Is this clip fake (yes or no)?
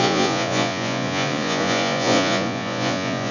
yes